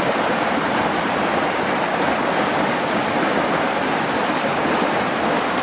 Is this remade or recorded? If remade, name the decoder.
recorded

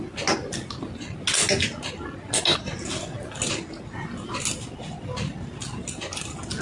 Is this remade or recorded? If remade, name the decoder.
recorded